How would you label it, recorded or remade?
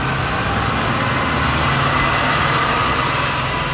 recorded